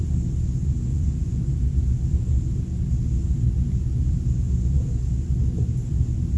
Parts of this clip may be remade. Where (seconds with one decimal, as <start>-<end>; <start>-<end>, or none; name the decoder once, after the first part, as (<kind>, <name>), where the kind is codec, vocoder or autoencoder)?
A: 0.9-1.6 (vocoder, Vocos)